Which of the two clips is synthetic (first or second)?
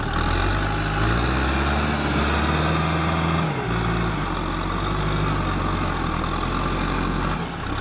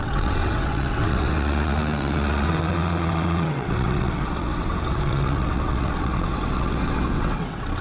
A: second